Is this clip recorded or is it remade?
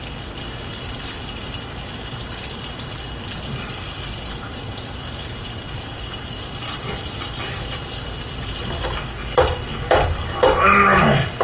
recorded